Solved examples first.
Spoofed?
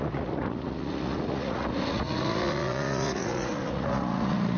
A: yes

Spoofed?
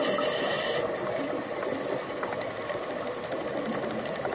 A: no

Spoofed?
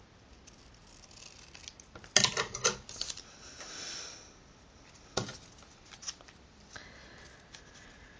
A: no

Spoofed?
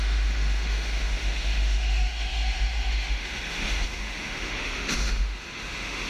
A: yes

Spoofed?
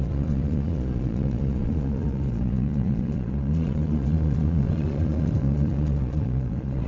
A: yes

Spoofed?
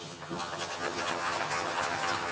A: yes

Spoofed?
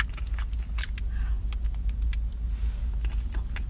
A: no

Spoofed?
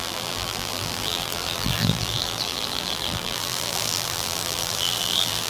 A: yes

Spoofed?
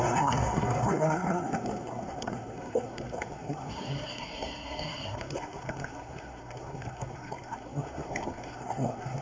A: yes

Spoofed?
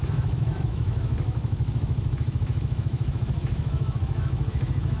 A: yes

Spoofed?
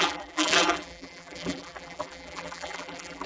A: yes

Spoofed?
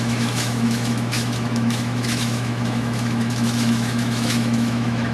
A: yes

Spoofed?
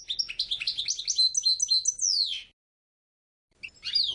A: no